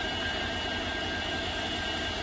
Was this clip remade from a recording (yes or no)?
no